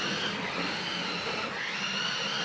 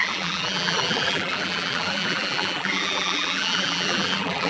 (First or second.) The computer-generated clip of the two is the second